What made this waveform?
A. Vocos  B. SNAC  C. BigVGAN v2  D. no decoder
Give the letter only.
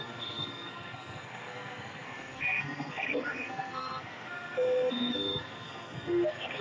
B